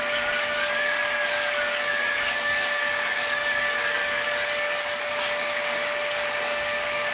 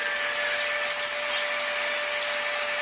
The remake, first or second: first